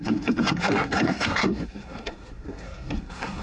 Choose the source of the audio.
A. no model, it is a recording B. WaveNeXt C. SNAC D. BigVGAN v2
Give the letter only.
C